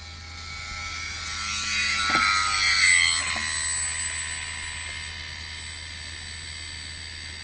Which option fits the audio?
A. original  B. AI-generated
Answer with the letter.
A